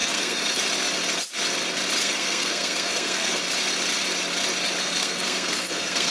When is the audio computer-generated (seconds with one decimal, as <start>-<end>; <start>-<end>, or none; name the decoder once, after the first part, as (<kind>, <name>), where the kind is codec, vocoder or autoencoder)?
0.0-0.6 (codec, SNAC); 2.0-3.4; 4.8-6.1